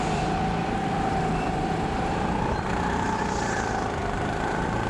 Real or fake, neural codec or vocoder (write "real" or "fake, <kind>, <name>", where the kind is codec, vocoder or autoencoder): fake, vocoder, BigVGAN v2